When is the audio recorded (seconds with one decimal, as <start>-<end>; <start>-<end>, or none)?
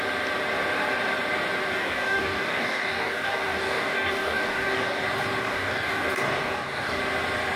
0.0-1.7; 5.0-5.4; 7.0-7.6